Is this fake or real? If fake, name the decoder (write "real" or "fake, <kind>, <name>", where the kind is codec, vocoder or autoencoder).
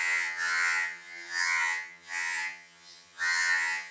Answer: fake, vocoder, HiFi-GAN